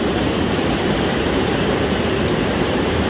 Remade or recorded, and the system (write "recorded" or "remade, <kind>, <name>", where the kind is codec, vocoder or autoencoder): remade, vocoder, BigVGAN v2